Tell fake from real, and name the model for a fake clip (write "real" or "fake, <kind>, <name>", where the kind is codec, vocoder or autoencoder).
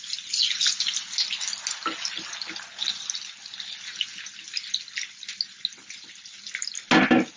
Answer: real